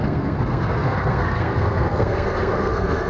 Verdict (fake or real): fake